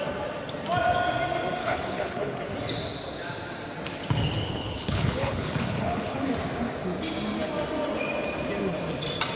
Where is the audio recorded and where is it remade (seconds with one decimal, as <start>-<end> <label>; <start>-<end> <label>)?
0.0-1.6 recorded; 1.6-2.5 remade; 2.5-4.4 recorded; 4.4-6.3 remade; 6.3-9.4 recorded